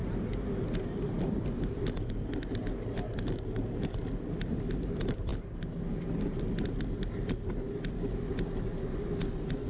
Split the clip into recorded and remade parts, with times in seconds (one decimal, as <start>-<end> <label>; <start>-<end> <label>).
0.0-9.7 recorded

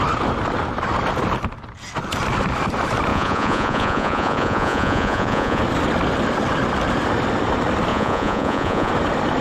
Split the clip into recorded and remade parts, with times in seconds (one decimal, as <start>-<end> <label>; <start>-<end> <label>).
0.0-3.1 recorded; 3.1-5.6 remade; 5.6-7.9 recorded; 7.9-8.9 remade; 8.9-9.4 recorded

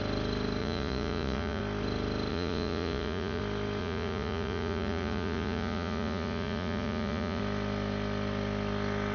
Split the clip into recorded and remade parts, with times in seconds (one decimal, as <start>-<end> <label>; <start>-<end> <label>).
0.0-0.6 recorded; 0.6-1.6 remade; 1.6-2.3 recorded; 2.3-3.4 remade; 3.4-3.8 recorded; 3.8-7.4 remade; 7.4-9.1 recorded

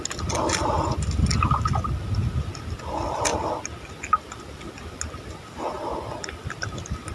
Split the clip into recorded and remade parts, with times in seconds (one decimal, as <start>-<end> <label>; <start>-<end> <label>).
0.0-7.1 recorded